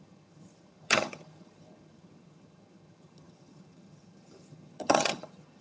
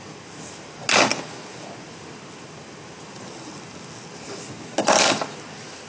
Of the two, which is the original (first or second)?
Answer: second